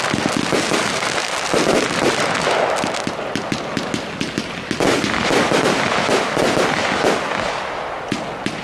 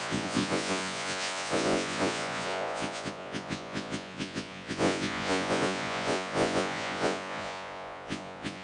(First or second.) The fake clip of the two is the second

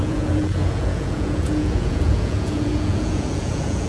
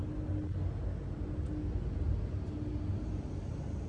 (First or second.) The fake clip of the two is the first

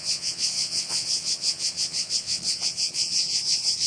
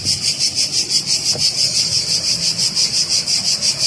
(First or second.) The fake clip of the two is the first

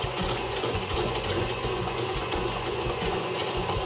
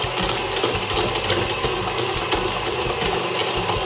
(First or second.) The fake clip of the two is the first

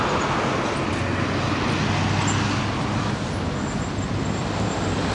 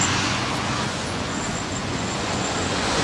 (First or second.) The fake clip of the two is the second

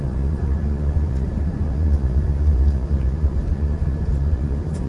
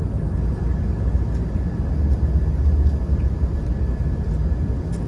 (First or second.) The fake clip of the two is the first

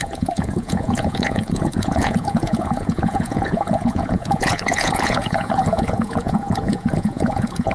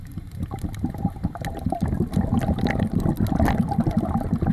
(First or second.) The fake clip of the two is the first